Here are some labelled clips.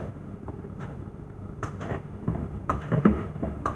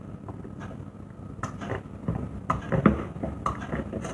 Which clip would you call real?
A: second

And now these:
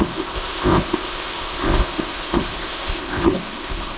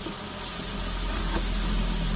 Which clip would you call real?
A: second